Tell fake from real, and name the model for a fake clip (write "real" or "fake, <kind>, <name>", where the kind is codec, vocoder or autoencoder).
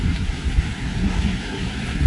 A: fake, codec, SNAC